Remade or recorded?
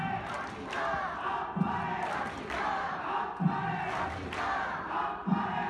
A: recorded